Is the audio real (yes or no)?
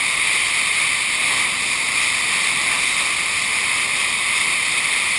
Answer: yes